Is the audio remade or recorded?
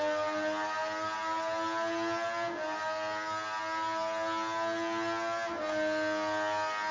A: recorded